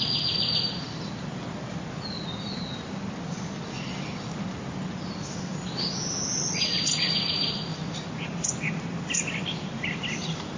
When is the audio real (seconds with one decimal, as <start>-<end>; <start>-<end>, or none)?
0.0-10.6